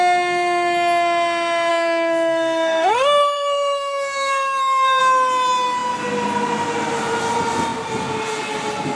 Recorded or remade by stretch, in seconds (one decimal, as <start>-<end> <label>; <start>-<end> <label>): 0.0-1.7 recorded; 1.7-5.0 remade; 5.0-9.0 recorded